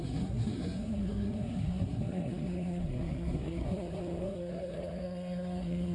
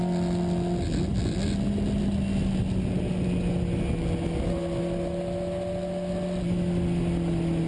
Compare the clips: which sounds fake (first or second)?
first